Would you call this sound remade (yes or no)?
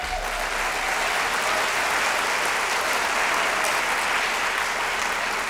no